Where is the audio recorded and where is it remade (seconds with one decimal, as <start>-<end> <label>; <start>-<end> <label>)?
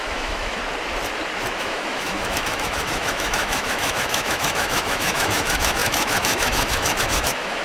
0.0-0.6 remade; 0.6-1.6 recorded; 1.6-7.6 remade